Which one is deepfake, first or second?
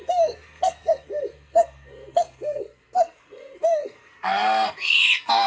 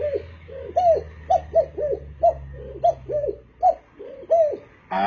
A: first